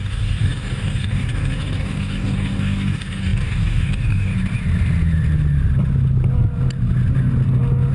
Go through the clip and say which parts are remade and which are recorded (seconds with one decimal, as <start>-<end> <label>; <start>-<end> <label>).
0.0-4.3 remade; 4.3-7.9 recorded